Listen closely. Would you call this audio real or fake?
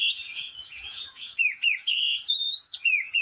fake